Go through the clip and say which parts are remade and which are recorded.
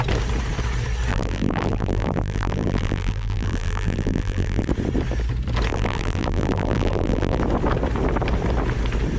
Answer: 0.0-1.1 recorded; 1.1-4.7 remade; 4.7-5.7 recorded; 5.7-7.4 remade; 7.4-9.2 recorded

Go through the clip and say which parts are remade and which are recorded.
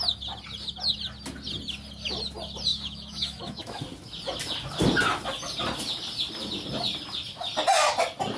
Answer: 0.0-2.7 recorded; 2.7-3.8 remade; 3.8-8.4 recorded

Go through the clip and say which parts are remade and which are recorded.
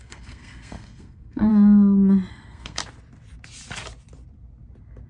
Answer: 0.0-1.5 remade; 1.5-2.3 recorded; 2.3-2.8 remade; 2.8-5.1 recorded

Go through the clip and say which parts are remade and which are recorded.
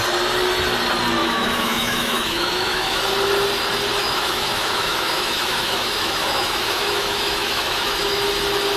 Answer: 0.0-1.2 recorded; 1.2-3.0 remade; 3.0-4.0 recorded; 4.0-8.2 remade; 8.2-8.8 recorded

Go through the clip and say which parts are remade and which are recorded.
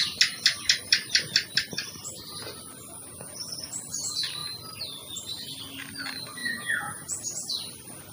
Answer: 0.0-3.0 recorded; 3.0-3.7 remade; 3.7-6.4 recorded; 6.4-7.2 remade; 7.2-8.1 recorded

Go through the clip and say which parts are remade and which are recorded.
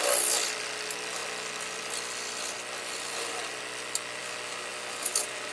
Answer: 0.0-5.5 recorded